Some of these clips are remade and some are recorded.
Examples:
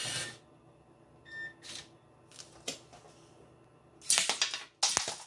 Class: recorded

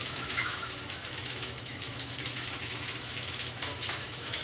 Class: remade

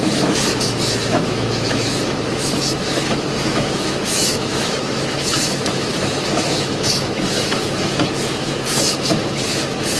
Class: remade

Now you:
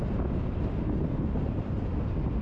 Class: recorded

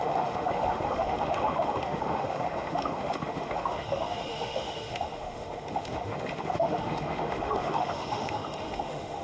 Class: remade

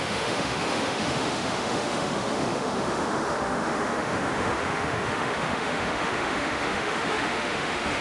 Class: remade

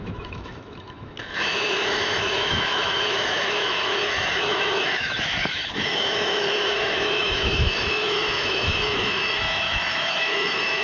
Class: remade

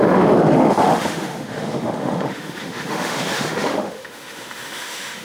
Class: remade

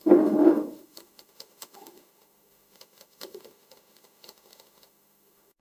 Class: remade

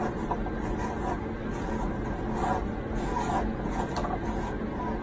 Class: recorded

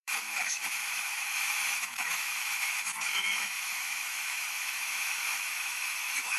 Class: remade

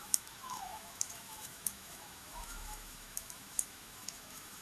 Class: remade